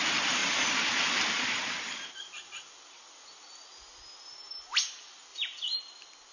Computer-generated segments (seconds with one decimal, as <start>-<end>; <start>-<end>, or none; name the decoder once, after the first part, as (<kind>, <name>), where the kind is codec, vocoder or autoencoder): 5.3-5.8 (vocoder, BigVGAN v2)